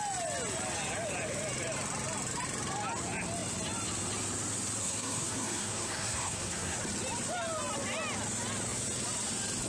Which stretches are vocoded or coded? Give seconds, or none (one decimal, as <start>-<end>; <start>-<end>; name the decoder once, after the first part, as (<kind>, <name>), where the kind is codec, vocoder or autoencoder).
4.8-6.8 (codec, SNAC)